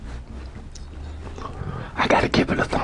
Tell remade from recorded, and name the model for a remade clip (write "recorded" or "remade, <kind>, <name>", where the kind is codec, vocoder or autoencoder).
recorded